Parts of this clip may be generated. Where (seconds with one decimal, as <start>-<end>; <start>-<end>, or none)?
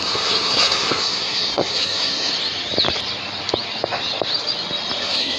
0.0-2.3; 5.0-5.4